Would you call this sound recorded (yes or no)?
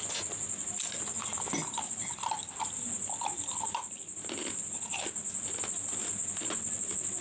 yes